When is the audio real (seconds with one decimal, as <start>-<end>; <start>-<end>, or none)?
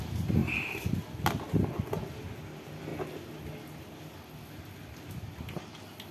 0.0-6.1